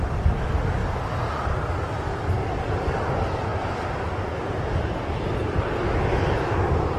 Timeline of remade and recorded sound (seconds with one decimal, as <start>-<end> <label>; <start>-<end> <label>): 0.0-7.0 recorded